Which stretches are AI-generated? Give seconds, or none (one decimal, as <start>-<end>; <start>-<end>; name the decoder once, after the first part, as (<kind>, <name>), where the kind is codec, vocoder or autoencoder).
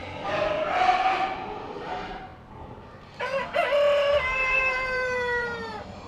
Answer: 1.7-2.3 (vocoder, BigVGAN v2); 4.1-6.1